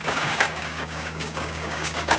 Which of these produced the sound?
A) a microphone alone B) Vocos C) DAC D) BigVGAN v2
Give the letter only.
C